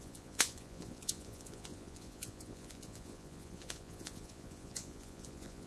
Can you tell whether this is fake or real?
fake